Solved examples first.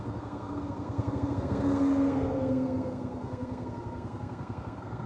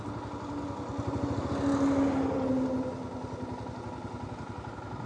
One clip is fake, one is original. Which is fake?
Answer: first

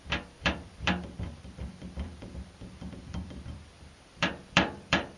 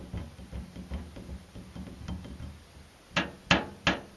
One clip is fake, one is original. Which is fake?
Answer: first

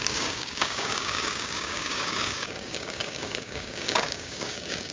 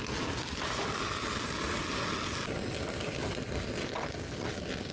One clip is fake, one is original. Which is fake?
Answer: first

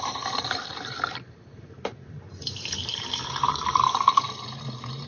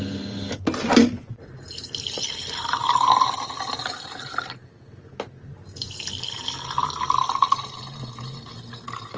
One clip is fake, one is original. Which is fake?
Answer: first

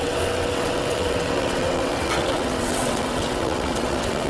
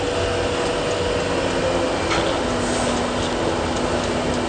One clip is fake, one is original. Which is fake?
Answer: first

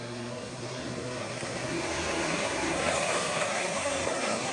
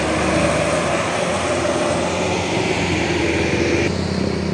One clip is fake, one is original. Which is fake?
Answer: first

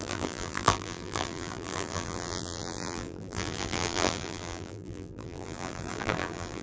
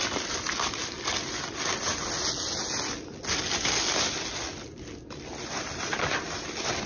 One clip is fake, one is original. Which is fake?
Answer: first